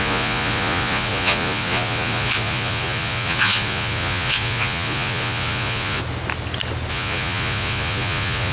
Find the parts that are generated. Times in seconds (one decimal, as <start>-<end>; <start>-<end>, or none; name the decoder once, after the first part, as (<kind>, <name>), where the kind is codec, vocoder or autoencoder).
0.0-6.0 (vocoder, Vocos); 6.9-8.5